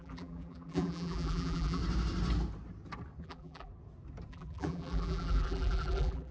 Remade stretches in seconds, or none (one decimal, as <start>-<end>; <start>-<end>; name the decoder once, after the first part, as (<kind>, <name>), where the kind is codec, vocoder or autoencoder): 0.0-1.8 (vocoder, BigVGAN v2); 3.2-3.7; 4.3-6.3